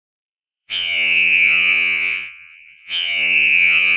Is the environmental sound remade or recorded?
remade